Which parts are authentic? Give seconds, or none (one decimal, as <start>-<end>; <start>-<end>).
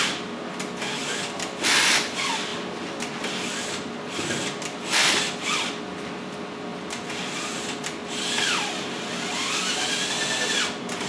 0.0-11.1